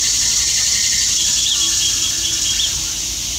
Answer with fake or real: real